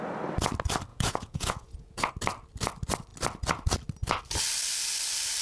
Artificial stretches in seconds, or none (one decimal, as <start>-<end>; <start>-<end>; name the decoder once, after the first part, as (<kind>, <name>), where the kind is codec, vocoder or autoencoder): 0.9-2.1 (vocoder, Vocos)